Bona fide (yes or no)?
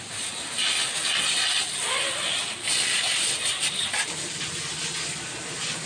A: yes